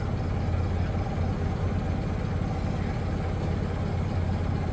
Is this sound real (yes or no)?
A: yes